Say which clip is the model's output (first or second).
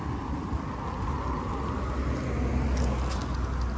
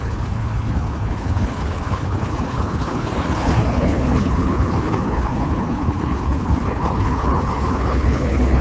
second